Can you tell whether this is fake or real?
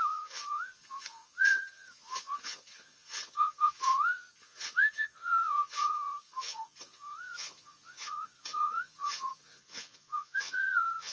fake